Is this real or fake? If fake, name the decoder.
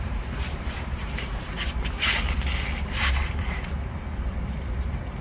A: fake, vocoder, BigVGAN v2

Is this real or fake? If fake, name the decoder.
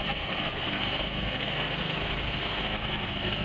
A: fake, codec, SNAC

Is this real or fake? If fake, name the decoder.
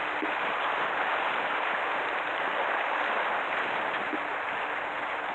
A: real